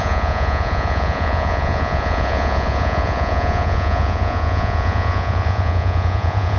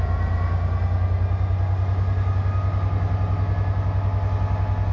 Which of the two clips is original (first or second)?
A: second